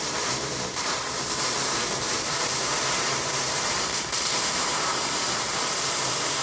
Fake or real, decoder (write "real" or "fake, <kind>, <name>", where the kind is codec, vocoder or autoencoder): fake, vocoder, BigVGAN v2